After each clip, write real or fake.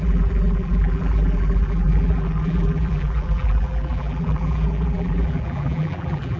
fake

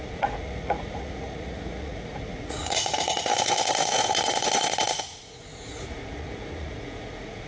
fake